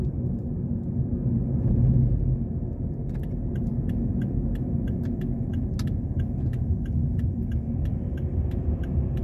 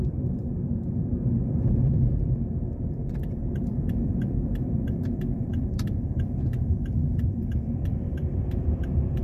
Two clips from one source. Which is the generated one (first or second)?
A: second